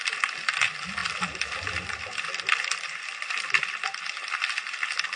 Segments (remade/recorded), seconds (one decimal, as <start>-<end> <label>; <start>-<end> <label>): 0.0-5.2 recorded